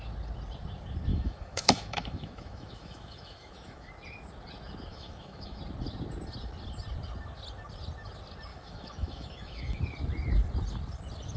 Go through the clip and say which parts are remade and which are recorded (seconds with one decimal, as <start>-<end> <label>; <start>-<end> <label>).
0.0-1.1 recorded; 1.1-3.9 remade; 3.9-4.9 recorded; 4.9-5.6 remade; 5.6-8.5 recorded; 8.5-9.8 remade; 9.8-11.4 recorded